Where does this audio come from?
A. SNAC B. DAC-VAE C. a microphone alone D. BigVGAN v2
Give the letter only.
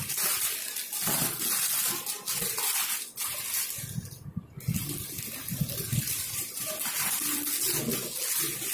C